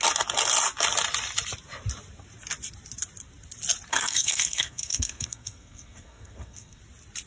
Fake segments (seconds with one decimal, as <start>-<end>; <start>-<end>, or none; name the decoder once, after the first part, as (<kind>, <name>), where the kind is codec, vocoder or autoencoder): 3.9-6.8 (codec, SNAC)